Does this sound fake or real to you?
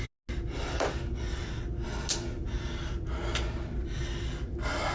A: real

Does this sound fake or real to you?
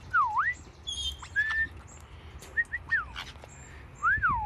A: real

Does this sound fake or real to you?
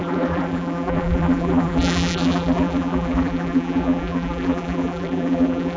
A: fake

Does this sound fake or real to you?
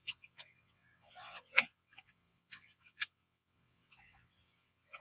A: fake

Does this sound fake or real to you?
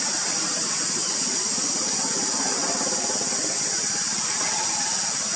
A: real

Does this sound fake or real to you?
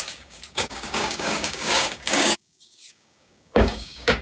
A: fake